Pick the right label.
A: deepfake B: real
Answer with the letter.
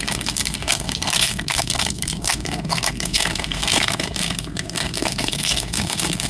A